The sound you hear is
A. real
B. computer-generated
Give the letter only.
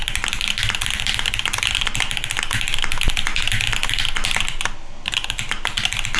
A